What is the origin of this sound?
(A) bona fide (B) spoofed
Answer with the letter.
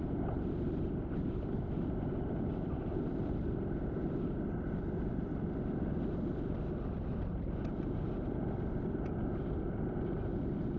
A